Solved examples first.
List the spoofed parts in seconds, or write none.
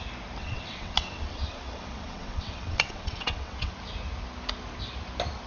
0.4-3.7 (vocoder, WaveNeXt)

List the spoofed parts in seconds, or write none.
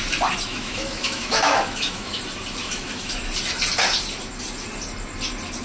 0.5-2.2 (autoencoder, DAC-VAE); 2.6-3.1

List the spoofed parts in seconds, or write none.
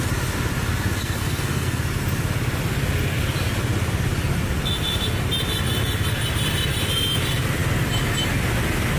1.0-1.8 (codec, SNAC)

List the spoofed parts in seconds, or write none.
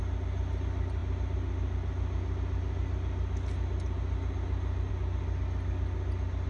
none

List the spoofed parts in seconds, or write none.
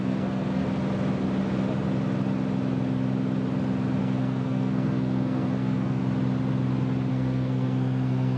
0.0-0.6 (codec, SNAC); 4.0-6.0; 7.1-8.4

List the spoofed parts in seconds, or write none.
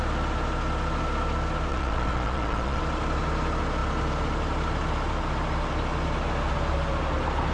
1.7-2.8 (vocoder, Vocos)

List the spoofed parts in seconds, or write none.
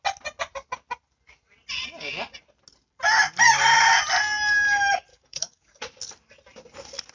5.1-5.8 (codec, DAC)